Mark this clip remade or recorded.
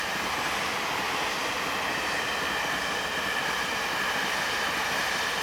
recorded